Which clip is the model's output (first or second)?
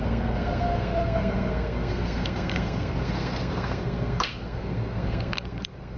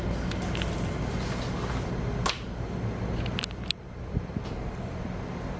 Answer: first